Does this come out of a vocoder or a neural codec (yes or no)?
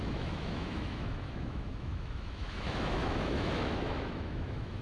yes